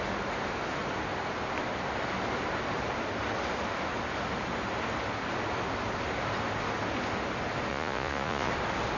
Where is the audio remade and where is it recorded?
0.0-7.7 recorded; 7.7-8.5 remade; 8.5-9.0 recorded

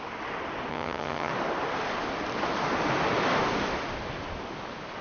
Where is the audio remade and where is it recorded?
0.0-0.7 recorded; 0.7-1.3 remade; 1.3-5.0 recorded

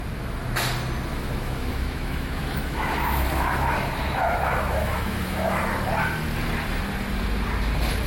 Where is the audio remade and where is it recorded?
0.0-1.1 recorded; 1.1-5.6 remade; 5.6-8.1 recorded

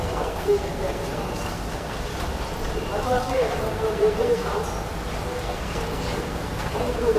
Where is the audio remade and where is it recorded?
0.0-2.1 remade; 2.1-3.0 recorded; 3.0-4.5 remade; 4.5-5.2 recorded; 5.2-7.2 remade

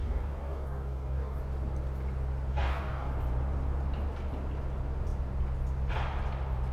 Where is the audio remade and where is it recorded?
0.0-1.4 remade; 1.4-2.5 recorded; 2.5-3.1 remade; 3.1-6.7 recorded

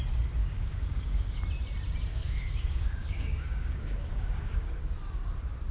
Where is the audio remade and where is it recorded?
0.0-0.4 recorded; 0.4-1.4 remade; 1.4-2.1 recorded; 2.1-4.8 remade; 4.8-5.7 recorded

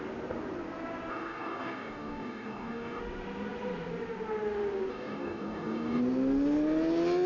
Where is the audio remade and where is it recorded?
0.0-1.1 recorded; 1.1-3.0 remade; 3.0-4.9 recorded; 4.9-6.0 remade; 6.0-7.3 recorded